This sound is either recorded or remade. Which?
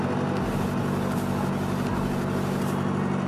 recorded